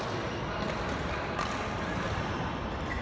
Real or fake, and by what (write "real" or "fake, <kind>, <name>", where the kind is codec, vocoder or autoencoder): real